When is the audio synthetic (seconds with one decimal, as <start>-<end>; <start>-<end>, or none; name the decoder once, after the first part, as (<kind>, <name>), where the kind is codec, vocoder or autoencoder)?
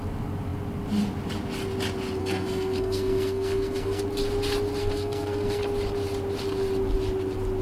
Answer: 2.2-4.0 (codec, SNAC); 4.8-5.6